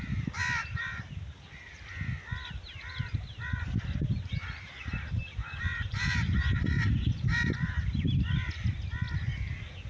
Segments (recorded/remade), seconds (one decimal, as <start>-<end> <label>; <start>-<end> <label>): 0.0-0.7 recorded; 0.7-1.8 remade; 1.8-2.9 recorded; 2.9-7.5 remade; 7.5-9.9 recorded